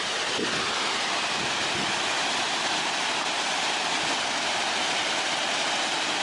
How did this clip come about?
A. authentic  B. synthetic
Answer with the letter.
A